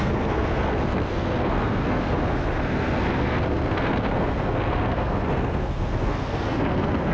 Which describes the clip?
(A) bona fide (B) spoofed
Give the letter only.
B